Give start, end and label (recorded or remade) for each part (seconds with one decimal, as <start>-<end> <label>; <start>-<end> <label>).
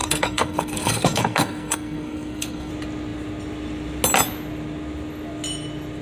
0.0-2.7 remade; 2.7-6.0 recorded